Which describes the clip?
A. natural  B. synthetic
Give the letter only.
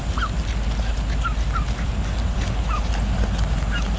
A